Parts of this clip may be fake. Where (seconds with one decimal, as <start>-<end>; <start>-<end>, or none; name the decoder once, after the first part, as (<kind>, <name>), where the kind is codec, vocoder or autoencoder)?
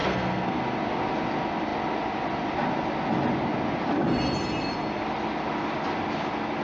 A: 0.0-0.6 (codec, SNAC)